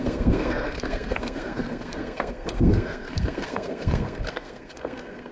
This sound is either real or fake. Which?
fake